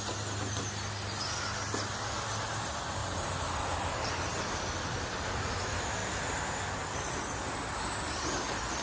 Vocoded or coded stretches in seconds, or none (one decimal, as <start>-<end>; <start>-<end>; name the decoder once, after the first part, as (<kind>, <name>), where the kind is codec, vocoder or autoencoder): 3.0-4.1 (vocoder, BigVGAN v2)

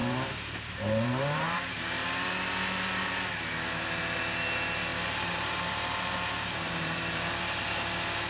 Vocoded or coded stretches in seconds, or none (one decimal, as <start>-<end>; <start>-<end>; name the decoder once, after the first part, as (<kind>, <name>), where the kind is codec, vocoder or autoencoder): 0.0-2.4 (vocoder, BigVGAN v2); 4.9-7.4

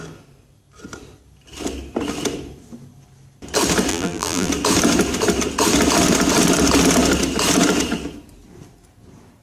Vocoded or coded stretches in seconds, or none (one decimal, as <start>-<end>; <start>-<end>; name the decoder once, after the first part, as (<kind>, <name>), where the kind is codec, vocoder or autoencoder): 3.9-4.5 (vocoder, BigVGAN v2)

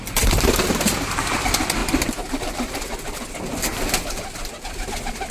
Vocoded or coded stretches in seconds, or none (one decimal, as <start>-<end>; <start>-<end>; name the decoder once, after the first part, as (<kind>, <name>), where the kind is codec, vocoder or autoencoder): 0.0-1.8 (vocoder, BigVGAN v2)

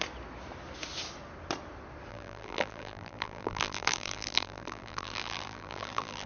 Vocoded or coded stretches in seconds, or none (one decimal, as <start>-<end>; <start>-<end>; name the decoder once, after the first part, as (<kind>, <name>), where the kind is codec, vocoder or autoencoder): 2.1-6.3 (vocoder, BigVGAN v2)

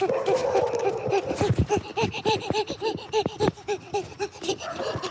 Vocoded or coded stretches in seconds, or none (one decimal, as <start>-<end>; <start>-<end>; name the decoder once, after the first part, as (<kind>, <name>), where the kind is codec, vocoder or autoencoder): 1.9-5.1 (vocoder, BigVGAN v2)

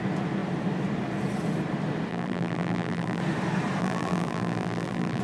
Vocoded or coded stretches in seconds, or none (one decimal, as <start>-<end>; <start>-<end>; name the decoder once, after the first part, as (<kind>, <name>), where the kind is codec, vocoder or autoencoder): 2.1-3.2 (vocoder, BigVGAN v2); 3.8-5.2

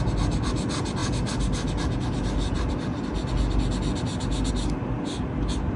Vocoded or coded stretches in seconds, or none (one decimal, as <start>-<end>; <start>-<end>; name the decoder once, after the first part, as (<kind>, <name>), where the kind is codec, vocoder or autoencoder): none